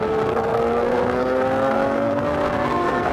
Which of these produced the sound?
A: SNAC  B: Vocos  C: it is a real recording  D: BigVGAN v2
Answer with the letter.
A